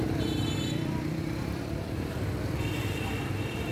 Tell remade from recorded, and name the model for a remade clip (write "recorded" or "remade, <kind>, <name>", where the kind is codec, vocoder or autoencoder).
remade, vocoder, BigVGAN v2